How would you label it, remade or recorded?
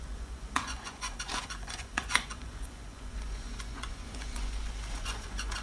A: remade